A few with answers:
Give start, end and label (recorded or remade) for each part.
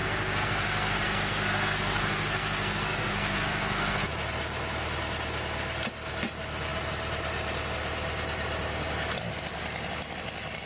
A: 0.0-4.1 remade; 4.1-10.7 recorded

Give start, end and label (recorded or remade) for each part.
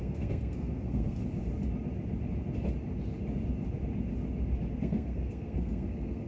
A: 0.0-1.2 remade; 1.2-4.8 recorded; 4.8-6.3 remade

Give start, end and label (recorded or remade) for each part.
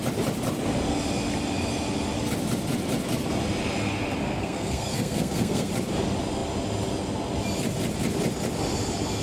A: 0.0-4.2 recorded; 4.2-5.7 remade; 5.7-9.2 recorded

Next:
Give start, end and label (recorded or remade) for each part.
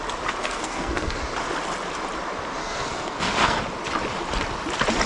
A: 0.0-0.4 recorded; 0.4-1.2 remade; 1.2-2.6 recorded; 2.6-3.6 remade; 3.6-5.1 recorded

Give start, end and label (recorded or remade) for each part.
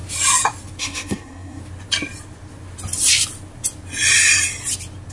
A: 0.0-0.8 recorded; 0.8-1.6 remade; 1.6-5.1 recorded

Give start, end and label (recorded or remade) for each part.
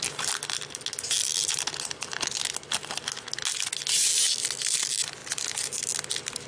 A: 0.0-6.5 recorded